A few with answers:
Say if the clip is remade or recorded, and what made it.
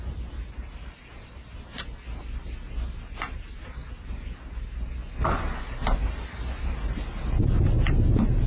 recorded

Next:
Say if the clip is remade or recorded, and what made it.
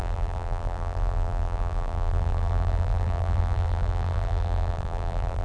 remade, vocoder, BigVGAN v2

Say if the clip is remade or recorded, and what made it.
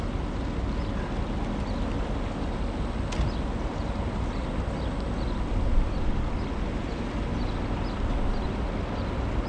recorded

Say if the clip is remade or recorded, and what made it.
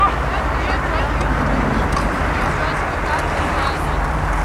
recorded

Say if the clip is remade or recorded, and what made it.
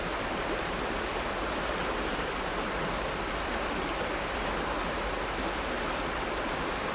recorded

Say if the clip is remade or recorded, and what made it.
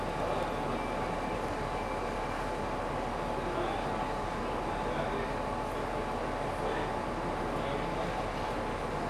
recorded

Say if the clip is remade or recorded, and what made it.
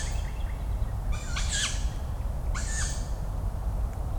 recorded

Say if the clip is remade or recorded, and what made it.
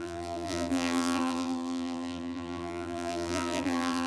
remade, vocoder, BigVGAN v2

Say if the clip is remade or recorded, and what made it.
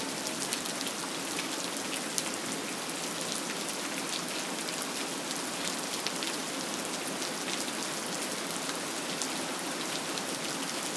recorded